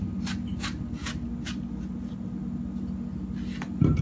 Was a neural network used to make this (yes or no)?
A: no